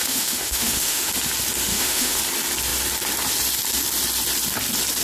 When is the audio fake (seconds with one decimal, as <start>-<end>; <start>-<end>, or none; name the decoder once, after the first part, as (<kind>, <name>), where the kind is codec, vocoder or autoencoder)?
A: 0.0-1.1 (autoencoder, DAC-VAE); 1.7-2.2